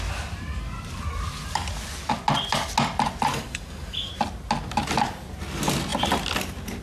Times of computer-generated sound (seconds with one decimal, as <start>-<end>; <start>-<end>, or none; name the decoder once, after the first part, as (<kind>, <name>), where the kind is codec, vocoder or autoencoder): 3.3-4.1 (codec, DAC)